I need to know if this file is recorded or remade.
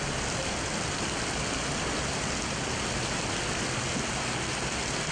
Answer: recorded